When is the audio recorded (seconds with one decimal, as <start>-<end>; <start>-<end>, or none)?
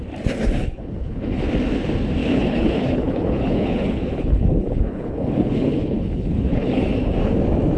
0.0-0.6; 1.5-2.2; 6.9-7.8